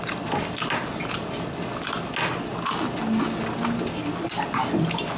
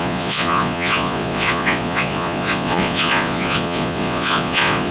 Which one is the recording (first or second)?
first